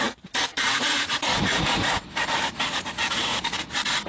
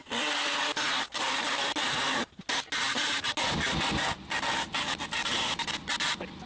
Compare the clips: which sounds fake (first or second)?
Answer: first